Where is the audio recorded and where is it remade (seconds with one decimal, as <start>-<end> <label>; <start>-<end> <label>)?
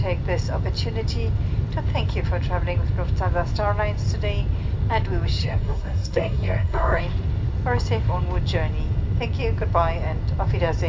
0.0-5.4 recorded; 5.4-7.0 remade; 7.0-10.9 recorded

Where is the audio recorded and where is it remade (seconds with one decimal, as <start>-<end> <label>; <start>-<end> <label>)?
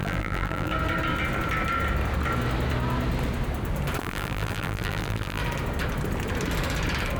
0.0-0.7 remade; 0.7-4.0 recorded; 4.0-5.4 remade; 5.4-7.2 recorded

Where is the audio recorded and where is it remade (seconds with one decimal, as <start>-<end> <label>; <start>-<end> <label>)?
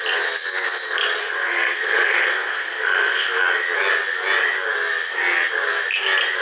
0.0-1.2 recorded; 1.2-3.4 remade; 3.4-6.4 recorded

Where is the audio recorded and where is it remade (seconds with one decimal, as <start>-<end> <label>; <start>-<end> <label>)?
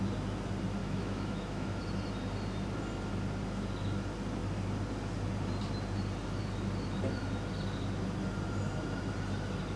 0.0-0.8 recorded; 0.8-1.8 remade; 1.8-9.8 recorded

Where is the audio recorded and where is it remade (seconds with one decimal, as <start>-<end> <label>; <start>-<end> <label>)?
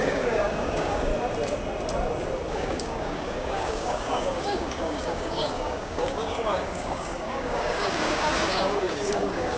0.0-1.1 remade; 1.1-2.5 recorded; 2.5-9.6 remade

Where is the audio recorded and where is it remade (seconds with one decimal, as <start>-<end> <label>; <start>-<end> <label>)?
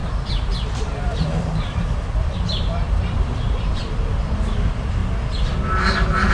0.0-5.0 remade; 5.0-6.3 recorded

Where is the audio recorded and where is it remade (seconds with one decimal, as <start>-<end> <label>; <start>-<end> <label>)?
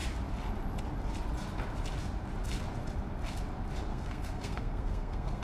0.0-3.9 recorded; 3.9-5.4 remade